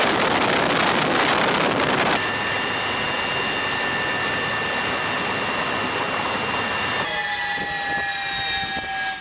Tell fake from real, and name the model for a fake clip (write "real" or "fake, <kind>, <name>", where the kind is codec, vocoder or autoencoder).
real